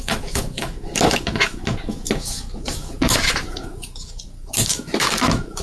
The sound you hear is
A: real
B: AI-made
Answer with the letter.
B